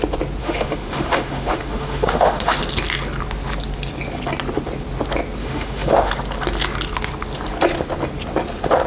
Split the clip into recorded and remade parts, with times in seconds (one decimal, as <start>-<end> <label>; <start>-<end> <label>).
0.0-0.4 recorded; 0.4-2.6 remade; 2.6-5.4 recorded; 5.4-6.1 remade; 6.1-8.9 recorded